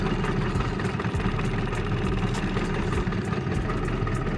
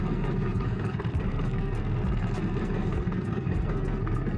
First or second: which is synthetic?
second